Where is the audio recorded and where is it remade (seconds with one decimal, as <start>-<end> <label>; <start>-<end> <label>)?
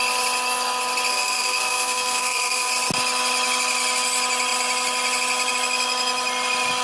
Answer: 0.0-1.1 recorded; 1.1-2.7 remade; 2.7-6.8 recorded